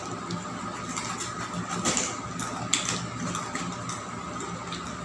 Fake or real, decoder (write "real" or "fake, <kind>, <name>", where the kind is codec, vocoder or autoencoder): real